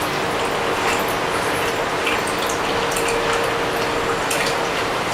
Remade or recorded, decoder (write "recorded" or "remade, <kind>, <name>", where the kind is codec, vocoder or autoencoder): recorded